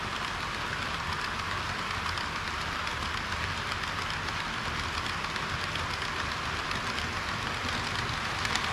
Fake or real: real